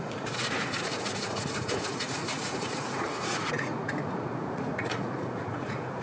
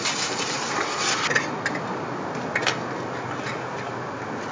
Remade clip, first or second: first